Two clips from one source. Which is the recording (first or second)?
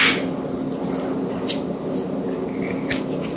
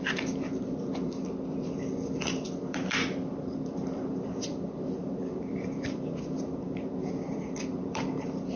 first